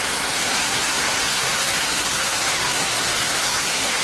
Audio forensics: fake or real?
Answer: fake